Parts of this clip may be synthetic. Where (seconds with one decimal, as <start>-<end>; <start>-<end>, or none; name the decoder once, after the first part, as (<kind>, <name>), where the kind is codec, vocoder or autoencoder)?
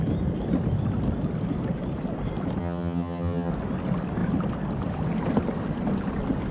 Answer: 2.6-3.5 (vocoder, HiFi-GAN)